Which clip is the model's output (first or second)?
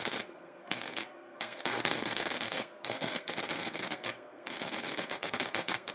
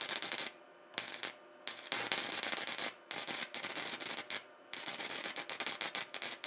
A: first